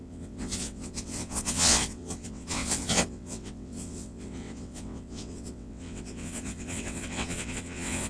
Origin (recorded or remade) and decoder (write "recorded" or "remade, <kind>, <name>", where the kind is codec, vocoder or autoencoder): remade, vocoder, WaveNeXt